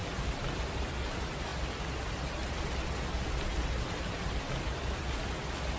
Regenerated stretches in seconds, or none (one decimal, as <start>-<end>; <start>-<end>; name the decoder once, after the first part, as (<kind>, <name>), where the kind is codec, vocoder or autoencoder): none